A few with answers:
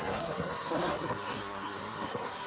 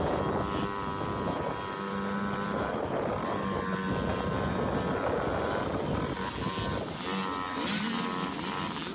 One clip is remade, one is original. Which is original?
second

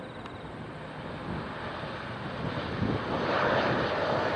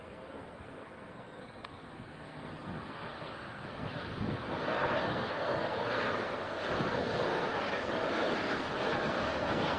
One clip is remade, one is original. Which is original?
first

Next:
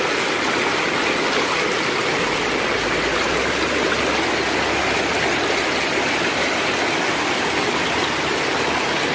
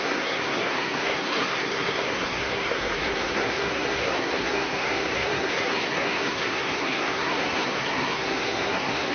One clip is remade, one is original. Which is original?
first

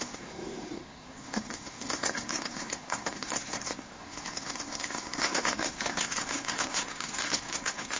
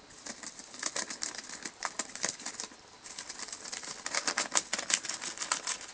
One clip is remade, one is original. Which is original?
second